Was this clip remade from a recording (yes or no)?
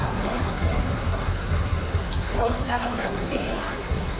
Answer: yes